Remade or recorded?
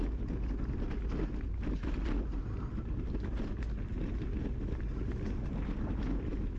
recorded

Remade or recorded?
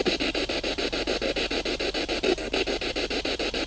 remade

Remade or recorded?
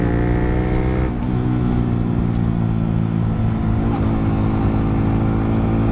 recorded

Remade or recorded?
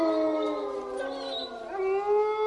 recorded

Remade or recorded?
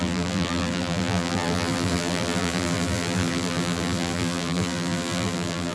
remade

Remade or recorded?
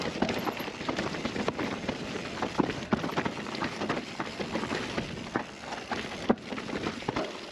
recorded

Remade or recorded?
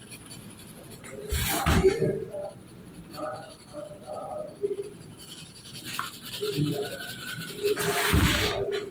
remade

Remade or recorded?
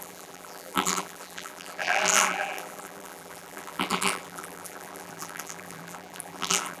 remade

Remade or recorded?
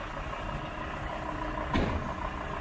recorded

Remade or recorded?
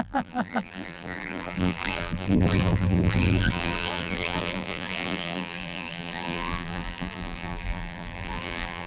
remade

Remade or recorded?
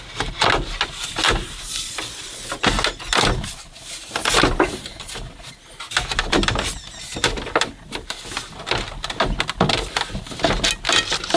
recorded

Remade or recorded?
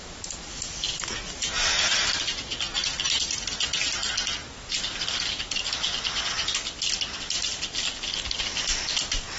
recorded